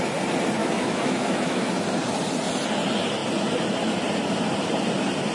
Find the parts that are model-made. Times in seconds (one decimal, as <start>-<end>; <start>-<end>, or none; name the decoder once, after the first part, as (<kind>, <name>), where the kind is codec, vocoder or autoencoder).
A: 0.6-1.7 (autoencoder, DAC-VAE)